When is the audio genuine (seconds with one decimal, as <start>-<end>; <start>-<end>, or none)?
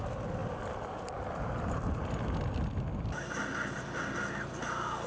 0.0-0.4; 2.1-2.9; 3.8-5.1